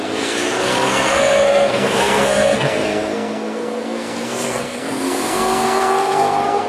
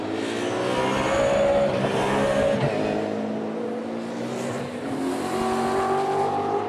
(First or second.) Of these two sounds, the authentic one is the second